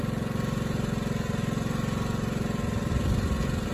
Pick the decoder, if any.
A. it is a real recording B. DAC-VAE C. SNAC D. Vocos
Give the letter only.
A